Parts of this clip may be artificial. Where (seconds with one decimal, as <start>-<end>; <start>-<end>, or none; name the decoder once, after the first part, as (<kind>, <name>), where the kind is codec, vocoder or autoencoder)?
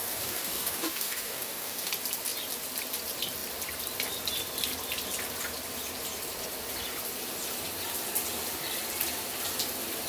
0.0-1.9 (codec, DAC)